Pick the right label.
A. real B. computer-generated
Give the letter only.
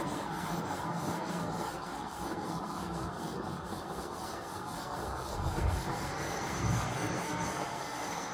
B